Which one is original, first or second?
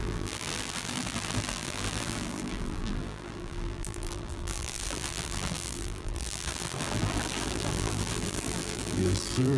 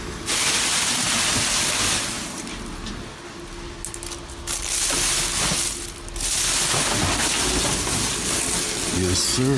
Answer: second